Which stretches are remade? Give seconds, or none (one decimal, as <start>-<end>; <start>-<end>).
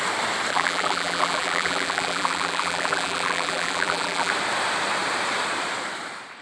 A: 0.5-4.3